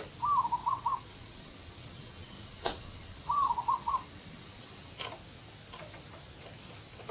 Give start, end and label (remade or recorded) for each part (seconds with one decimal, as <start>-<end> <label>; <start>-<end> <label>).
0.0-0.6 recorded; 0.6-4.9 remade; 4.9-7.1 recorded